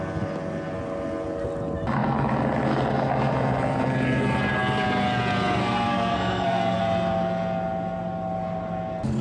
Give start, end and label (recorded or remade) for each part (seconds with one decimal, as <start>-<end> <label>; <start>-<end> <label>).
0.0-5.6 recorded; 5.6-6.8 remade; 6.8-9.2 recorded